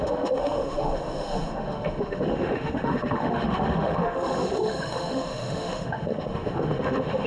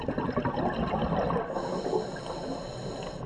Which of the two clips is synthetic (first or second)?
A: first